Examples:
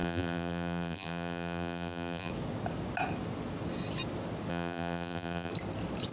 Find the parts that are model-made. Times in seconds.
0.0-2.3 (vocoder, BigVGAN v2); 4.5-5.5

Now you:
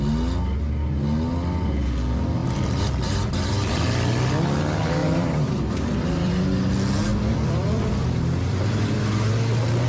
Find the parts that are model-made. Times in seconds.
2.4-3.5 (vocoder, BigVGAN v2); 5.0-6.3; 7.1-9.3

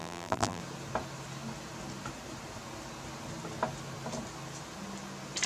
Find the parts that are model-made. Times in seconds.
0.0-0.6 (vocoder, BigVGAN v2)

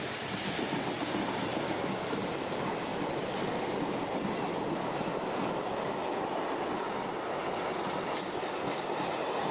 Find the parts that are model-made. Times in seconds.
none

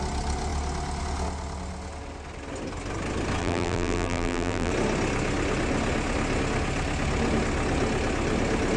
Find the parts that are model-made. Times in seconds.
3.4-4.7 (vocoder, BigVGAN v2)

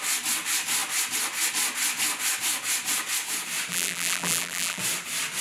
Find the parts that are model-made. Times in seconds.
3.7-4.8 (vocoder, BigVGAN v2)

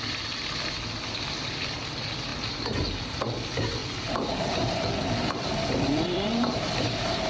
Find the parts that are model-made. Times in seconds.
2.3-3.2 (vocoder, BigVGAN v2); 3.8-7.3